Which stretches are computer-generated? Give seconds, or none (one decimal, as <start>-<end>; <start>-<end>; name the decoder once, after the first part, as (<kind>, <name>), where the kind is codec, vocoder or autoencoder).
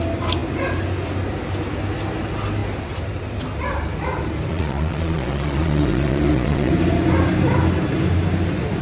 4.5-6.7 (vocoder, Vocos)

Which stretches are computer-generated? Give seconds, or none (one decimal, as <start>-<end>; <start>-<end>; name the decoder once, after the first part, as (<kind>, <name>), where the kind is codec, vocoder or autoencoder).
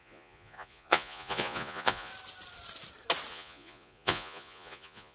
0.0-2.1 (vocoder, Vocos); 3.3-5.1